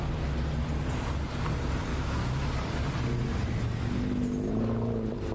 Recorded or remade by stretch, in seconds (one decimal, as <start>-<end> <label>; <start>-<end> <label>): 0.0-1.9 recorded; 1.9-2.5 remade; 2.5-5.3 recorded